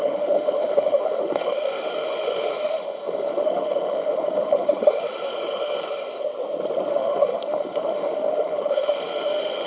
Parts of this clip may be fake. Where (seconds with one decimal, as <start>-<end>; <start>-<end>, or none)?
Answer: 0.0-6.0; 6.9-9.7